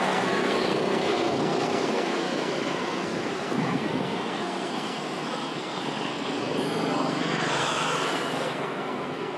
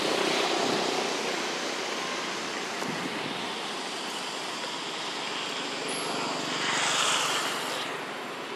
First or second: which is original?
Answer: second